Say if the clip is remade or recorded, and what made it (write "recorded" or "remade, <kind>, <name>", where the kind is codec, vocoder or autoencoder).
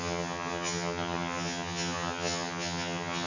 remade, vocoder, HiFi-GAN